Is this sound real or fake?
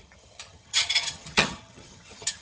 fake